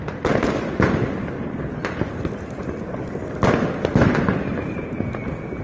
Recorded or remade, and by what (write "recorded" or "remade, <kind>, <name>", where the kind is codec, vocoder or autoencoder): recorded